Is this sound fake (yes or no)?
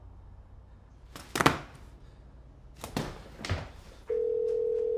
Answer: no